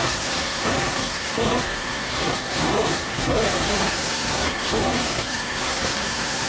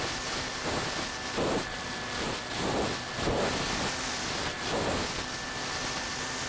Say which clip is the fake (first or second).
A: first